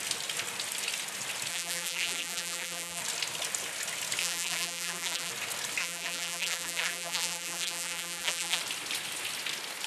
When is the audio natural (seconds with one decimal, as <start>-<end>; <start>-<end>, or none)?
0.0-1.5; 3.0-4.2; 5.3-5.8; 8.6-9.9

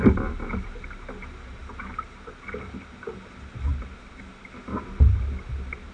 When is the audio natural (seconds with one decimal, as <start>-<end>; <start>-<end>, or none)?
0.0-1.6; 2.3-5.9

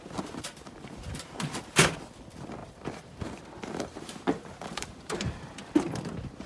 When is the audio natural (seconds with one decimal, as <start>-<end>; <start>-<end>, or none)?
none

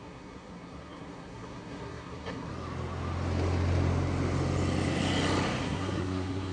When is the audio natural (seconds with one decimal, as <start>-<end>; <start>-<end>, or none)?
2.5-5.6

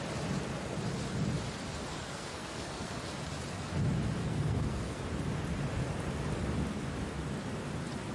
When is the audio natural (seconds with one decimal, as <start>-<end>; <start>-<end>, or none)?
0.0-2.0; 3.0-4.2; 5.0-8.1

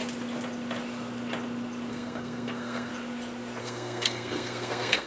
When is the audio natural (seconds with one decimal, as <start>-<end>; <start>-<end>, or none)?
0.0-1.9; 2.9-3.6

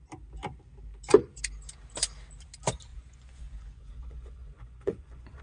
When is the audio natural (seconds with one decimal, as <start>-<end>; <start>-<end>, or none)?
0.0-2.9